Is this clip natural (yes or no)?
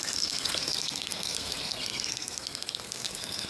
no